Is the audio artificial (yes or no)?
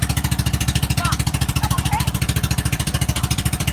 yes